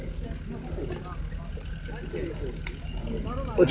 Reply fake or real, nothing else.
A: real